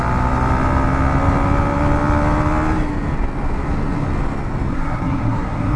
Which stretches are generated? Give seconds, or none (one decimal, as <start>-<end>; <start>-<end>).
4.7-5.8